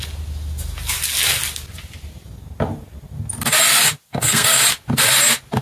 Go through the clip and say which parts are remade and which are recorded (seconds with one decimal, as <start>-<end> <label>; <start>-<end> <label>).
0.0-4.1 recorded; 4.1-4.6 remade; 4.6-5.6 recorded